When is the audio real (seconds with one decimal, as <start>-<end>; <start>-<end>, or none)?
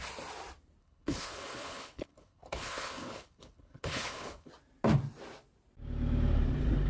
0.0-0.8; 4.5-6.9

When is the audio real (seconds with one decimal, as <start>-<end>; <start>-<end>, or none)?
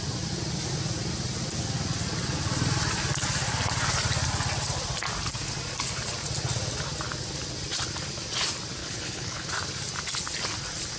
0.0-8.8; 9.5-11.0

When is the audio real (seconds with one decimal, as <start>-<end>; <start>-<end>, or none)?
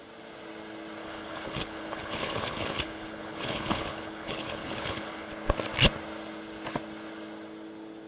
0.0-1.0; 5.3-8.1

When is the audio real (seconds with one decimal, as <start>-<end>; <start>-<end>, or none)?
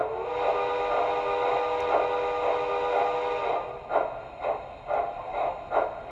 0.0-6.1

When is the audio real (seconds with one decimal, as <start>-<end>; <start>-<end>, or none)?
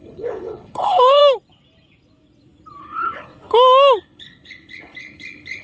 1.2-2.8; 3.3-4.0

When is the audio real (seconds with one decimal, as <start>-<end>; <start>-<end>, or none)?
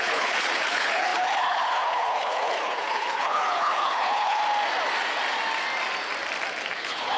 4.4-6.7